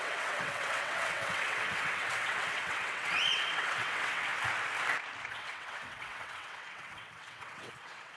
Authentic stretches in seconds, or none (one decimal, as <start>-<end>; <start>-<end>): 4.3-5.3

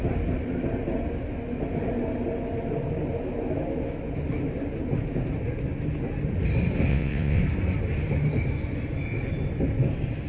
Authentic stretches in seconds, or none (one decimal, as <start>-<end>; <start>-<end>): 0.0-6.9; 7.4-10.3

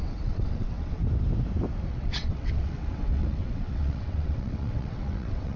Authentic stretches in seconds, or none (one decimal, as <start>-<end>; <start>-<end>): 1.0-1.9

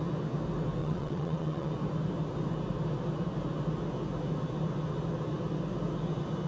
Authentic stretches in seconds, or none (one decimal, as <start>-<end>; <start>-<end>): 0.0-0.8; 1.7-6.5